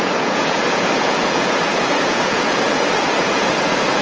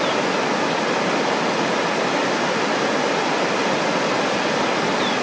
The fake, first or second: first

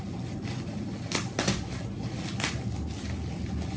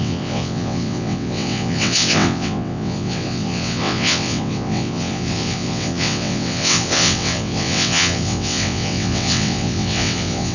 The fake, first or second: second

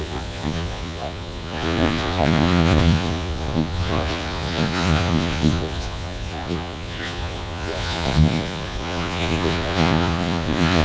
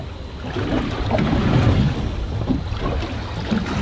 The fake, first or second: first